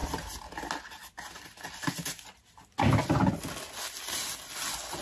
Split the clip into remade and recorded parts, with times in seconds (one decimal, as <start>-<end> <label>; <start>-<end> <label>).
0.0-5.0 recorded